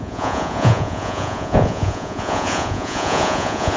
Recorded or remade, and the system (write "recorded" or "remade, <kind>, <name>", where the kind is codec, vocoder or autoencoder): remade, vocoder, Vocos